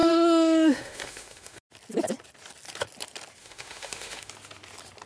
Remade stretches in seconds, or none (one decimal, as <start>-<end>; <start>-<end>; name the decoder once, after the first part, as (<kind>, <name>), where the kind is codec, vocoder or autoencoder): 0.0-1.6 (autoencoder, DAC-VAE); 3.4-4.3